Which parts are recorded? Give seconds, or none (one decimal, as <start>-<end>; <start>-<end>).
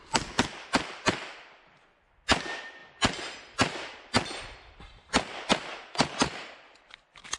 0.0-2.8